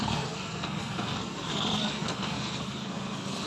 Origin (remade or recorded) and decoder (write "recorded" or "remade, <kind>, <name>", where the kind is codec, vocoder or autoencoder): remade, codec, SNAC